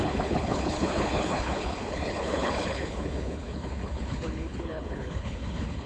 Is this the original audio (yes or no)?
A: no